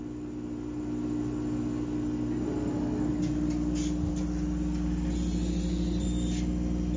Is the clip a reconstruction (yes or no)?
no